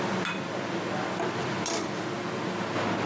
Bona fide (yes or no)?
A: yes